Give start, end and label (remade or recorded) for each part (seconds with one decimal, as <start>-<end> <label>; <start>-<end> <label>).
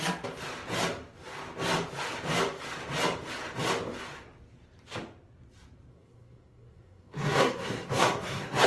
0.0-5.9 recorded; 5.9-8.7 remade